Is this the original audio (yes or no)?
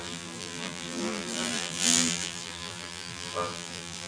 no